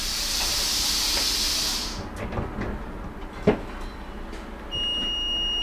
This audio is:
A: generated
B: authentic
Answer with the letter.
B